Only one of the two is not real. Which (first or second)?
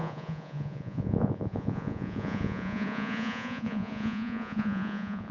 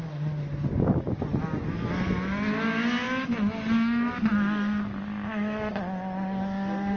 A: first